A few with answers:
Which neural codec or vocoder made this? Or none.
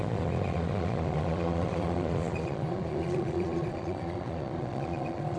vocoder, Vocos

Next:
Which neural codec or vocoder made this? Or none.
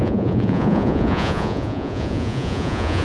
vocoder, Vocos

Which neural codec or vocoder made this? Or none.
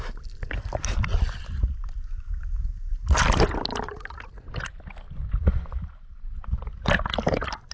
none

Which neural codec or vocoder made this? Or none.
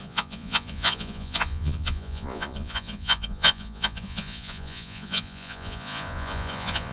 vocoder, Vocos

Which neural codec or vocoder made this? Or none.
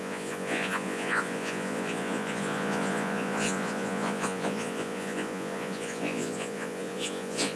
vocoder, Vocos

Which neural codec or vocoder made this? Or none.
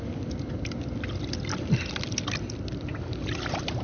none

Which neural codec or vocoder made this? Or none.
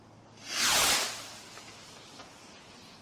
none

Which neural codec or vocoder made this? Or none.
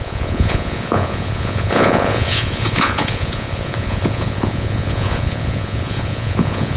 vocoder, Vocos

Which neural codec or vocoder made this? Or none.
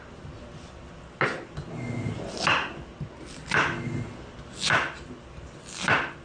none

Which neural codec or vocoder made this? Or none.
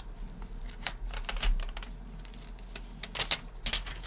none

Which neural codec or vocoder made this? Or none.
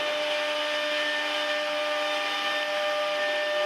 none